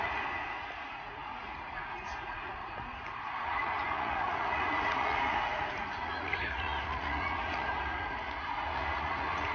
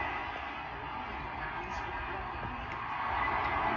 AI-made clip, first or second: first